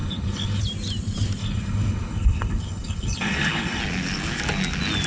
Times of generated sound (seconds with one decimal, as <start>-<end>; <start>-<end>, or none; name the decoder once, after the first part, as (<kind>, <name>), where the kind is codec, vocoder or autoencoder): 0.0-0.6 (codec, HILCodec); 1.4-3.8